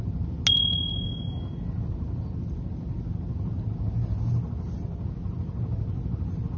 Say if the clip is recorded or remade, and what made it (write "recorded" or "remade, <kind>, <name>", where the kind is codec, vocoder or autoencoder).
recorded